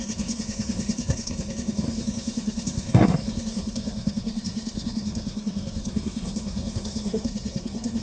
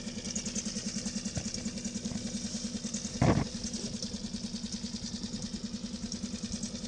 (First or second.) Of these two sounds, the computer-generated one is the first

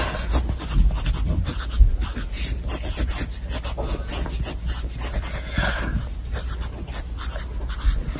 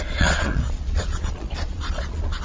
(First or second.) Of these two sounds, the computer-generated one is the second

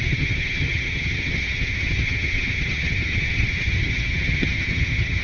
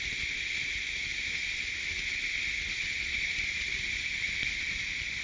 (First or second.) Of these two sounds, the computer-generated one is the first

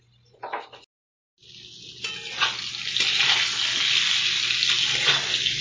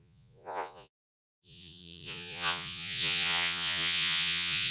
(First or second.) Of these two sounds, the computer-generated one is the second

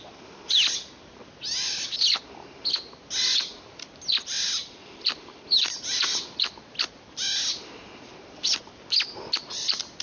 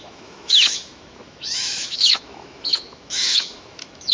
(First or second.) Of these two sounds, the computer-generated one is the second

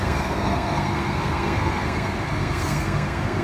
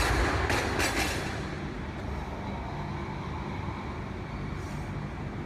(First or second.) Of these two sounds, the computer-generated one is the first